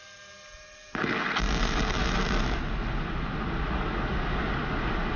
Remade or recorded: recorded